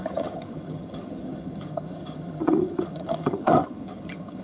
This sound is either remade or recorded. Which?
remade